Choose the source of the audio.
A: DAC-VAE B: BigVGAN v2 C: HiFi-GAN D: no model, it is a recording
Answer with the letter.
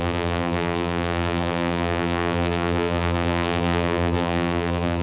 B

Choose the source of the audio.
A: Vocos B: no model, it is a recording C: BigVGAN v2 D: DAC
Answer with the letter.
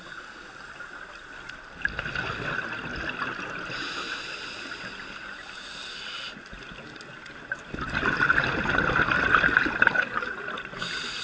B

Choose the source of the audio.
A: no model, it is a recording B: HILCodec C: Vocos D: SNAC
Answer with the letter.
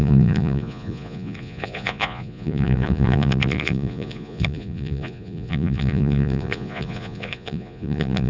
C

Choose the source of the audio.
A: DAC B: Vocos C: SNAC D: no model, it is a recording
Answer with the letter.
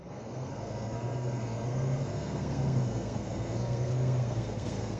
C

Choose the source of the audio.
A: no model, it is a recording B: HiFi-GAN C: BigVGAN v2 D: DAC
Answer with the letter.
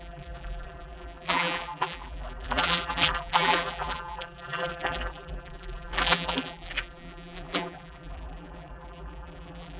C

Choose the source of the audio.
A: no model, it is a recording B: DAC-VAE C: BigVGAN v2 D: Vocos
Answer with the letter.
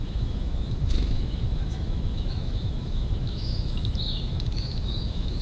B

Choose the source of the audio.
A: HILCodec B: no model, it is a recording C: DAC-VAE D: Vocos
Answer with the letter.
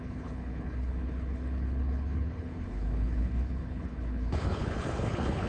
A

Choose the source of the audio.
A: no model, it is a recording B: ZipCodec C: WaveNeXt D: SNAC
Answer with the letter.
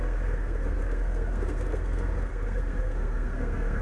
D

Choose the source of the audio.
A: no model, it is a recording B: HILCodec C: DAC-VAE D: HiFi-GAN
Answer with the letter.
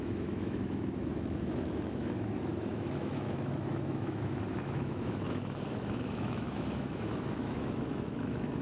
C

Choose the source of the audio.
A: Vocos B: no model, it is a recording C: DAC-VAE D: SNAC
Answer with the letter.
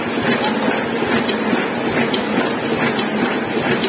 B